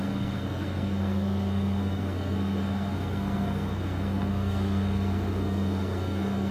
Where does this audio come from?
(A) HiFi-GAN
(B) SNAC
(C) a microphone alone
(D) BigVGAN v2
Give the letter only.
B